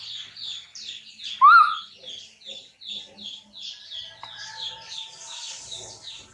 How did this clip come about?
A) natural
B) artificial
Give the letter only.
A